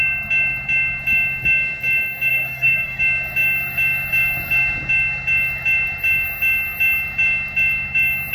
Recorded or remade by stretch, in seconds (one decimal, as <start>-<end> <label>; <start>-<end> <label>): 0.0-2.3 recorded; 2.3-3.0 remade; 3.0-8.3 recorded